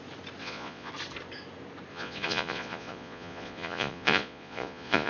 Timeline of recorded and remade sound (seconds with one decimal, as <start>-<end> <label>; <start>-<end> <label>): 0.0-0.4 recorded; 0.4-0.9 remade; 0.9-1.9 recorded; 1.9-5.1 remade